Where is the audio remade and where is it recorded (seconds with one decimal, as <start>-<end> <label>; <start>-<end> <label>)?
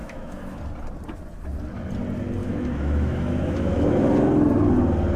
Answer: 0.0-0.6 remade; 0.6-2.4 recorded; 2.4-3.9 remade; 3.9-5.2 recorded